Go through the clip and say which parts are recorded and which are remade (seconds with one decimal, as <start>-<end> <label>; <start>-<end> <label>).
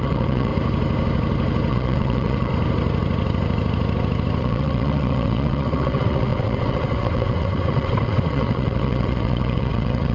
0.0-0.5 remade; 0.5-1.7 recorded; 1.7-2.5 remade; 2.5-4.4 recorded; 4.4-10.1 remade